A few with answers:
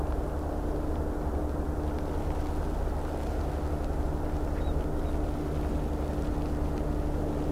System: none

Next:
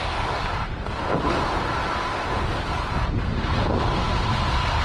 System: none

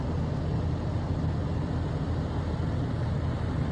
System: none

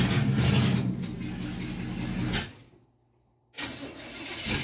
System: none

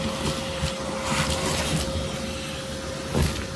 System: none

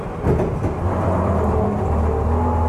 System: none